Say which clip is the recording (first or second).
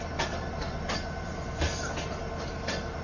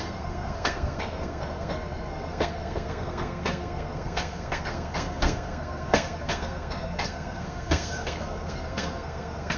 first